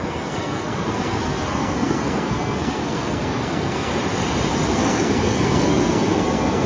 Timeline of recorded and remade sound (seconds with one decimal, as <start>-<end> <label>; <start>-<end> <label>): 0.0-3.9 remade; 3.9-4.7 recorded; 4.7-6.7 remade